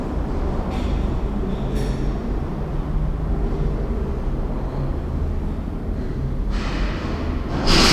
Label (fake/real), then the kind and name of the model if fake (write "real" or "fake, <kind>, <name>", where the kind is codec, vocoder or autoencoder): real